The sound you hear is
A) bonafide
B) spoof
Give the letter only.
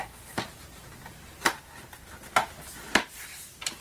B